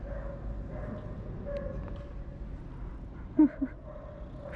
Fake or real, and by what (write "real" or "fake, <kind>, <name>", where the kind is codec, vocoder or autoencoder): real